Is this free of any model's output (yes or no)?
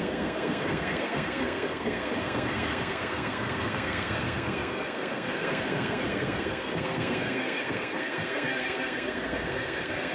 no